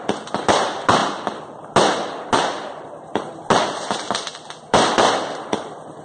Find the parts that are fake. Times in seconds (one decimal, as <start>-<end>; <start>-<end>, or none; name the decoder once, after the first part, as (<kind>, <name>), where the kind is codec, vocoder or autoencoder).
none